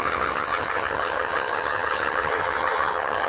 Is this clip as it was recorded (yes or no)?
no